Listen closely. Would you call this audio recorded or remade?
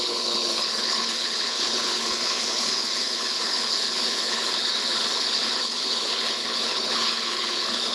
remade